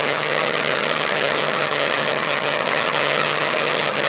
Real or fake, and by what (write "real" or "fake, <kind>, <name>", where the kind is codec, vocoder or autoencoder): fake, vocoder, HiFi-GAN